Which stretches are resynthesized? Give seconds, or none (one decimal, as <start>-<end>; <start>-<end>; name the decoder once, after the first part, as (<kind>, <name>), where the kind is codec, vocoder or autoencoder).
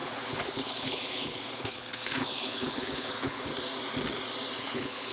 0.0-3.5 (codec, HILCodec); 4.6-5.1